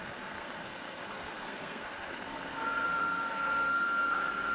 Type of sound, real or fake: fake